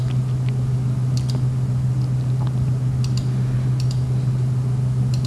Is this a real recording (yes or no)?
yes